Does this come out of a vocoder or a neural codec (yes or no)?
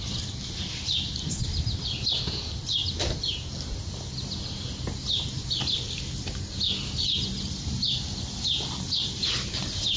no